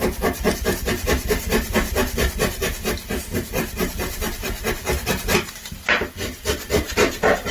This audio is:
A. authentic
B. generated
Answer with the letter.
B